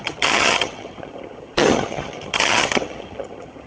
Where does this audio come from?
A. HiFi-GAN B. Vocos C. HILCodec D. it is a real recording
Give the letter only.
A